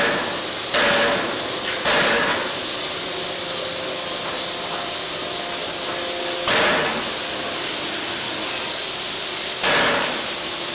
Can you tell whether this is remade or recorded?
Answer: recorded